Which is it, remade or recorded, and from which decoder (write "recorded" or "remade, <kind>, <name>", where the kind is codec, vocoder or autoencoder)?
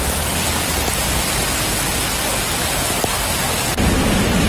recorded